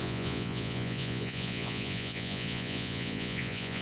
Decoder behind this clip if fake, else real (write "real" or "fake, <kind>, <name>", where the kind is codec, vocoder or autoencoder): fake, vocoder, Vocos